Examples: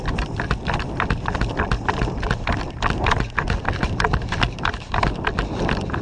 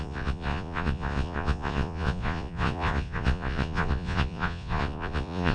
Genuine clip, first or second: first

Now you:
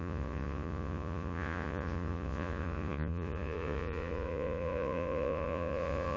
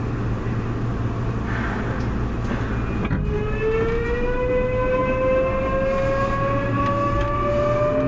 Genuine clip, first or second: second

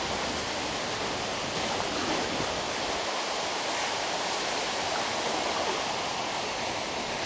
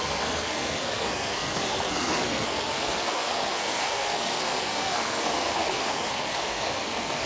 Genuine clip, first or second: first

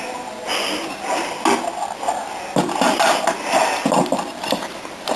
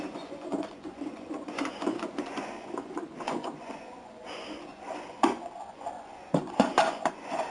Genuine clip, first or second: first